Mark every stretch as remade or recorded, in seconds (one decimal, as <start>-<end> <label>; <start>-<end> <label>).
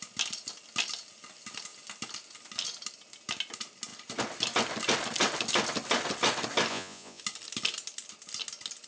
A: 0.0-6.7 recorded; 6.7-7.2 remade; 7.2-8.9 recorded